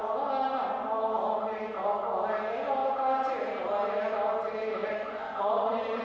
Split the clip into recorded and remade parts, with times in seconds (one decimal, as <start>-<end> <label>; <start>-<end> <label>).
0.0-4.8 recorded; 4.8-6.0 remade

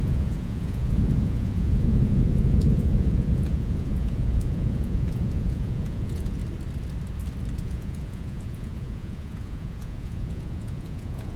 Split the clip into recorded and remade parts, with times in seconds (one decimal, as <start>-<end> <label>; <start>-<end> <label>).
0.0-6.4 remade; 6.4-7.6 recorded; 7.6-11.4 remade

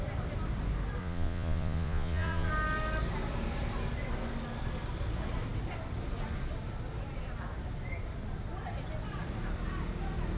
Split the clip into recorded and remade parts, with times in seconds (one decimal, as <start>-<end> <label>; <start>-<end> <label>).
0.0-1.0 recorded; 1.0-2.5 remade; 2.5-10.4 recorded

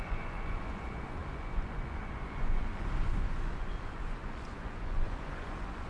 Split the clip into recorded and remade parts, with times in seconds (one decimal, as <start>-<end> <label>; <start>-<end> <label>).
0.0-5.9 remade

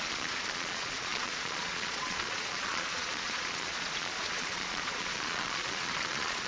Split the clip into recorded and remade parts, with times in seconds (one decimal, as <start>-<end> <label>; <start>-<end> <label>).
0.0-6.5 remade

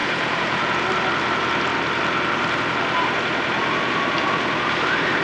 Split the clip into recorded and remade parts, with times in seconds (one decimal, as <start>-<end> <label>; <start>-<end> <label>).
0.0-0.8 remade; 0.8-5.2 recorded